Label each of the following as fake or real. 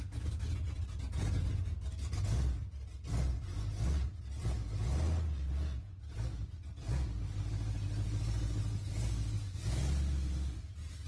real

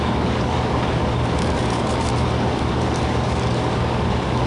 fake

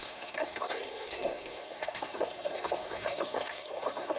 fake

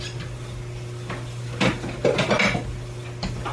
real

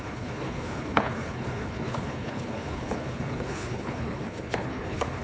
fake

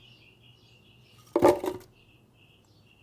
real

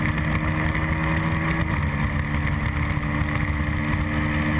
real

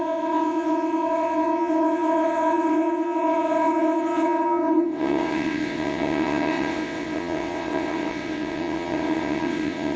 fake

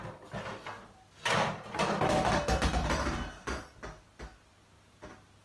real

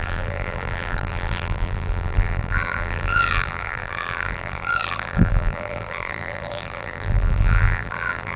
fake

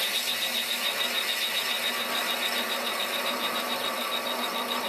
real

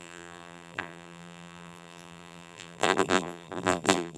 fake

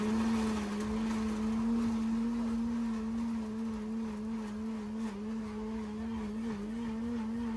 real